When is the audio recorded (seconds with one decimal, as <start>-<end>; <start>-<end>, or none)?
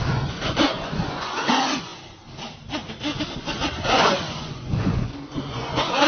1.9-3.3